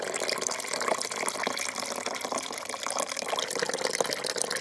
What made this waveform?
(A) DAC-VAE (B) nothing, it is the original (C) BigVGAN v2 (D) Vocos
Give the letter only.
C